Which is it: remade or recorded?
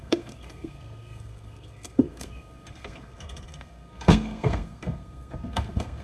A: remade